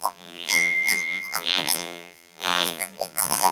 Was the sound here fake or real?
fake